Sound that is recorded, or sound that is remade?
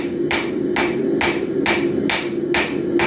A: recorded